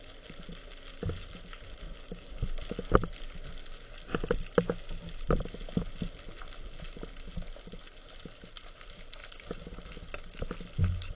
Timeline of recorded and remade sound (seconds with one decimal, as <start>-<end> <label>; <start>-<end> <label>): 0.0-11.1 recorded